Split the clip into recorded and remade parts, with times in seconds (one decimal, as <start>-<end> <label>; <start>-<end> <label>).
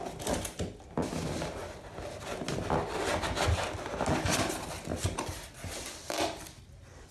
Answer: 0.0-7.1 recorded